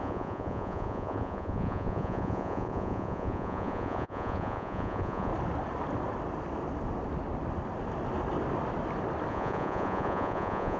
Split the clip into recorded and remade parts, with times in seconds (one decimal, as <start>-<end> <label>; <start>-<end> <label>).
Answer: 0.0-5.3 remade; 5.3-9.3 recorded; 9.3-10.8 remade